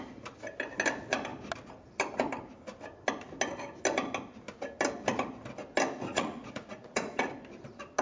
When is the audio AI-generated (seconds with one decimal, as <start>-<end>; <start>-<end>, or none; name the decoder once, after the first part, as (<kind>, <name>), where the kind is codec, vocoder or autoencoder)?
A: 6.1-7.3 (vocoder, Vocos)